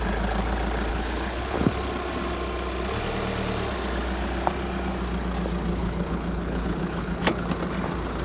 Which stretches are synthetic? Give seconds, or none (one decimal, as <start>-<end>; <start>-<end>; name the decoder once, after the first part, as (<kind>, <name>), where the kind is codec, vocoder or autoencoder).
0.9-1.7 (codec, HILCodec); 5.7-7.5